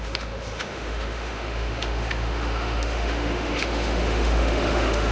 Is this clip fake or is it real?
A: fake